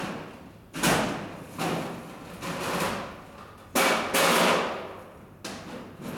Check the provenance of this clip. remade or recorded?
recorded